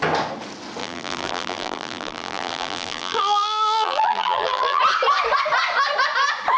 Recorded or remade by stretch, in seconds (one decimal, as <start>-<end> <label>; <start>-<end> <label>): 0.0-0.8 recorded; 0.8-4.8 remade; 4.8-6.6 recorded